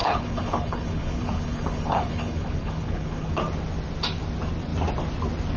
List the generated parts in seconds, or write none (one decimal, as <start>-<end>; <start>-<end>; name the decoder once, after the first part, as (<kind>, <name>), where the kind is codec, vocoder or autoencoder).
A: 0.0-3.4 (codec, HILCodec)